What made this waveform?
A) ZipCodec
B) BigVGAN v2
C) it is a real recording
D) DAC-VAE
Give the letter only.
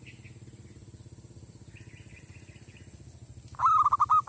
C